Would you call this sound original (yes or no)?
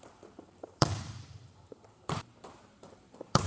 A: no